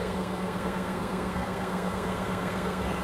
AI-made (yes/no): yes